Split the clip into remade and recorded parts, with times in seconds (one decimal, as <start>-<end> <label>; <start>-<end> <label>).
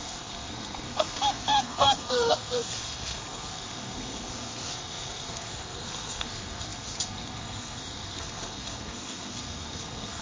0.0-10.2 remade